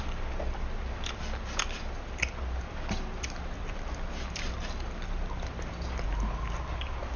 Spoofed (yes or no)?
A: no